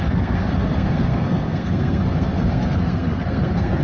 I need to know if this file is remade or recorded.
remade